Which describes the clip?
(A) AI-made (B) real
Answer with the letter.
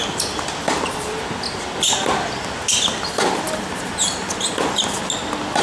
B